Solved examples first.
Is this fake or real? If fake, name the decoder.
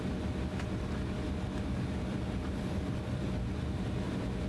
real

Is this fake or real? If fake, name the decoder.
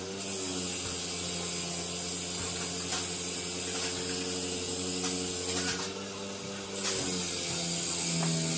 real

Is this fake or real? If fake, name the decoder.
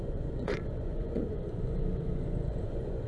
fake, vocoder, Vocos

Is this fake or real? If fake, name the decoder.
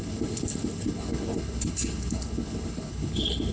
fake, codec, HILCodec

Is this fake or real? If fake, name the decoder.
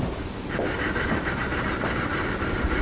fake, vocoder, BigVGAN v2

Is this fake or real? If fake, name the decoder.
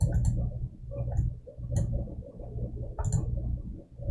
real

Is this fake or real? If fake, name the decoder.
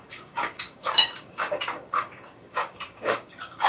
fake, codec, DAC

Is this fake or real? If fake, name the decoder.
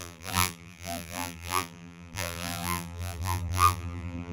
fake, vocoder, BigVGAN v2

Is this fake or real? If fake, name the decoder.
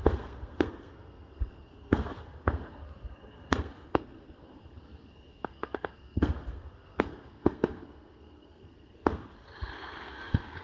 fake, codec, SNAC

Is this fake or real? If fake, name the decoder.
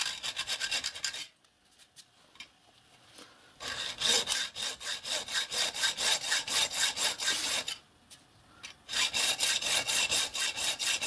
real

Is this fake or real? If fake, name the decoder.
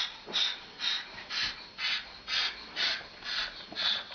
real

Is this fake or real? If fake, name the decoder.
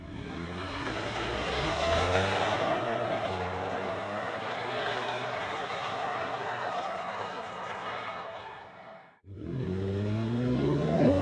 fake, codec, SNAC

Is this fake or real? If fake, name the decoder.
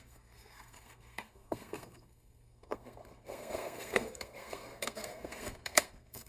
fake, codec, SNAC